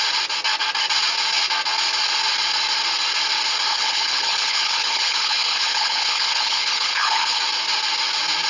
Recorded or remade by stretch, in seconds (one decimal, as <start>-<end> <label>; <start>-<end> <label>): 0.0-3.7 recorded; 3.7-7.4 remade; 7.4-8.5 recorded